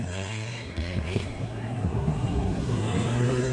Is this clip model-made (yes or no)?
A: yes